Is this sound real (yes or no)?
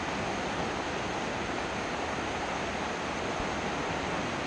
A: yes